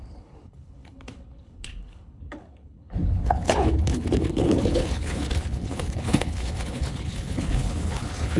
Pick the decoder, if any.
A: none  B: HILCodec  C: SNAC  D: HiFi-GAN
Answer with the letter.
B